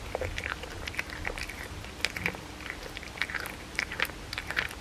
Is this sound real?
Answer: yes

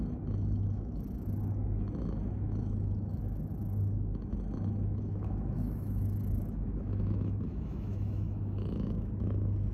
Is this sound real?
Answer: no